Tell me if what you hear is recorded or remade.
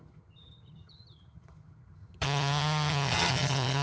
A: remade